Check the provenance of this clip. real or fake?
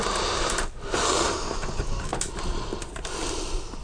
real